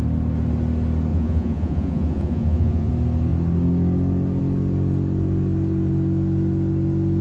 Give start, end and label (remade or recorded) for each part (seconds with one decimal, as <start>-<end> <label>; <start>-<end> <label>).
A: 0.0-1.1 recorded; 1.1-2.9 remade; 2.9-7.2 recorded